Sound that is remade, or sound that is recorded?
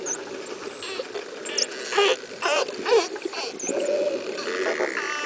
recorded